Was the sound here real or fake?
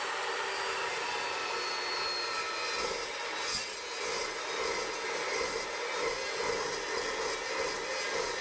real